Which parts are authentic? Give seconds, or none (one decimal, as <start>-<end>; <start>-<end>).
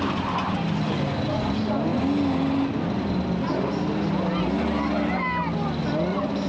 0.0-6.5